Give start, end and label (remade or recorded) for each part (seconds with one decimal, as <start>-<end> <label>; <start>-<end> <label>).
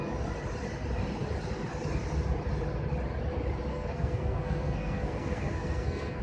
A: 0.0-3.7 recorded; 3.7-6.2 remade